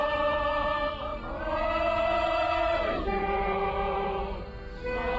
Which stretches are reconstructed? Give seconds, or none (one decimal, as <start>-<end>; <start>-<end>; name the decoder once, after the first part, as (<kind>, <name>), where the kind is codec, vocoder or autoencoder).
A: 1.1-4.2 (vocoder, Vocos)